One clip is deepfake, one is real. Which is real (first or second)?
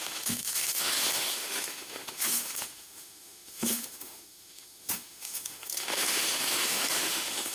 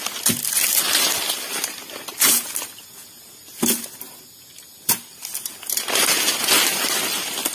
second